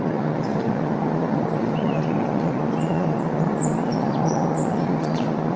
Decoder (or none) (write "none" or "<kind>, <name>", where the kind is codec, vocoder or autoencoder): vocoder, Vocos